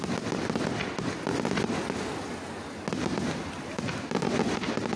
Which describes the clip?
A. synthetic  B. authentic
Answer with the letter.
B